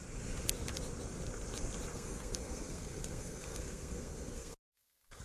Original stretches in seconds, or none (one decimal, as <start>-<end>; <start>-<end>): 0.0-1.9